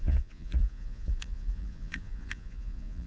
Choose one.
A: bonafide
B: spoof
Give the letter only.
B